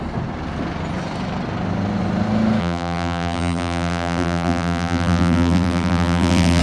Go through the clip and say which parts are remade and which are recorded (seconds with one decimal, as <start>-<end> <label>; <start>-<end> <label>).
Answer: 0.0-2.6 recorded; 2.6-6.6 remade